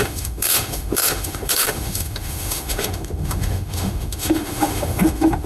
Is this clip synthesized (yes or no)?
yes